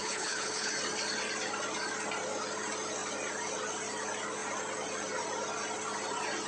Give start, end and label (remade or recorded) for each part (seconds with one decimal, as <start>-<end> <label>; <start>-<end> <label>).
0.0-0.7 remade; 0.7-6.5 recorded